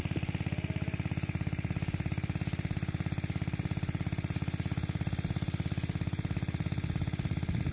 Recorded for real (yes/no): yes